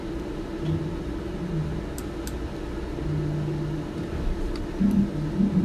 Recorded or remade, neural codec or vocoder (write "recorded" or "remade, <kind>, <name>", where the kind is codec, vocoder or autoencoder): recorded